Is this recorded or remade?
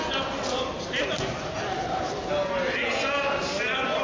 recorded